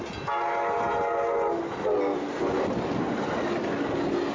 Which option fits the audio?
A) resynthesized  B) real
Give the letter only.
B